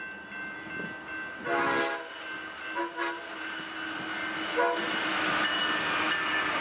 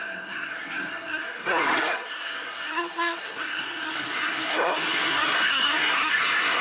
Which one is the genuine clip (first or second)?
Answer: first